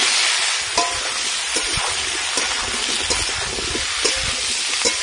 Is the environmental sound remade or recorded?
recorded